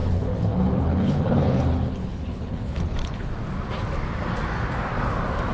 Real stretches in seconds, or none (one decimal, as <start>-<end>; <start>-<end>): 3.3-5.5